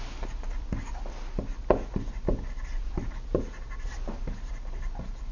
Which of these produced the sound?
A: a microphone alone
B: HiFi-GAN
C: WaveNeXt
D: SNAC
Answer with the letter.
A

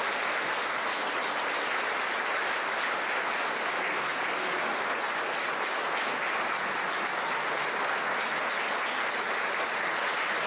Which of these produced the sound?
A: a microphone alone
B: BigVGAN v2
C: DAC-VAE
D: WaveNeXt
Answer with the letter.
A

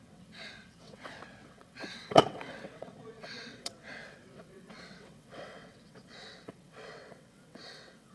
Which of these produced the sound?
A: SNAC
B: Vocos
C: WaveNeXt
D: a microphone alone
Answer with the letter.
C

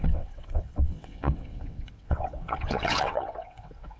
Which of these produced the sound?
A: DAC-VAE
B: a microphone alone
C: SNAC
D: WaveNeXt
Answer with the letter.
D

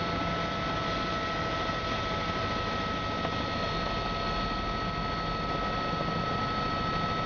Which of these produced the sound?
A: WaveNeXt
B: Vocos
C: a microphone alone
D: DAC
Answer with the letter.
C